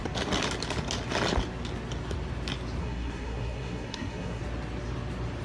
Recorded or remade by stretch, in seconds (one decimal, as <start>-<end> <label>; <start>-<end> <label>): 0.0-2.8 recorded; 2.8-4.4 remade; 4.4-5.4 recorded